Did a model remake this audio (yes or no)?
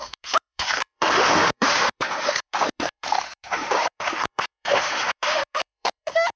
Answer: yes